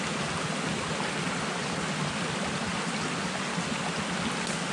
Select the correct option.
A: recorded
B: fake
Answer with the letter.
A